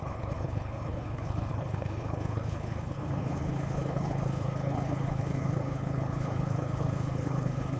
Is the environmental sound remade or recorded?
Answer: remade